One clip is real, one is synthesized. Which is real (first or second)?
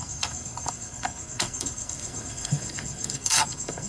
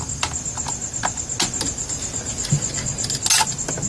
second